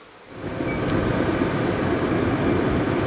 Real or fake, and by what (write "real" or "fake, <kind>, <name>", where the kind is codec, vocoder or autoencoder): real